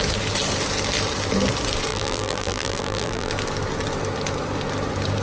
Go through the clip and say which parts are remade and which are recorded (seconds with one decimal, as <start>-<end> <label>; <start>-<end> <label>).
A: 0.0-1.9 recorded; 1.9-3.3 remade; 3.3-5.2 recorded